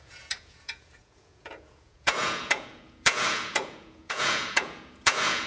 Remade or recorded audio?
remade